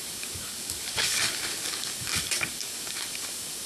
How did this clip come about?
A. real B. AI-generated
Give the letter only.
B